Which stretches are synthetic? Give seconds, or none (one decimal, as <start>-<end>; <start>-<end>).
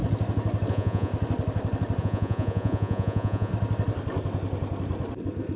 0.7-1.1; 2.0-3.5